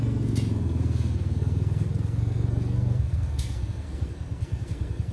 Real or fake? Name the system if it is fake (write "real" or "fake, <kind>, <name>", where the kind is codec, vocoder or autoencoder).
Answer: fake, codec, SNAC